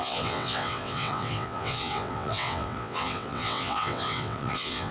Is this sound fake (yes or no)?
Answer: yes